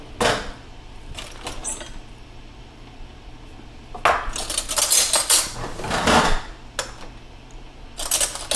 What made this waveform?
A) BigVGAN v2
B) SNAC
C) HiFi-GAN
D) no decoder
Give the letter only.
D